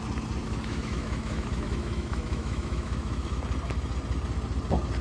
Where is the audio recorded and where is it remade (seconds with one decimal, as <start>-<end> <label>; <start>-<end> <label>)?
0.0-0.4 recorded; 0.4-3.4 remade; 3.4-5.0 recorded